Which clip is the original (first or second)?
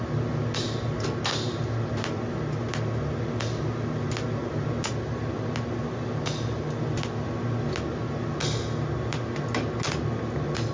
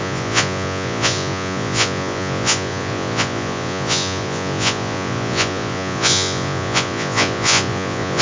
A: first